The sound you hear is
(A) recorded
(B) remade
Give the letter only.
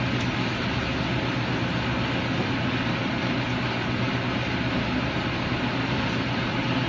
A